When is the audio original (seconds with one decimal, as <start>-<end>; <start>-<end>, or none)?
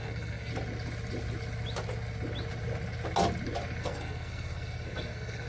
0.5-3.8